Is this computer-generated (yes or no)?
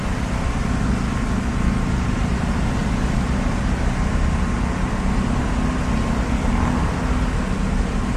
no